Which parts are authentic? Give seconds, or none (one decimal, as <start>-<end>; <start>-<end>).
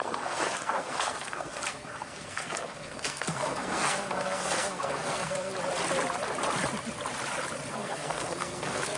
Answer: 5.5-7.7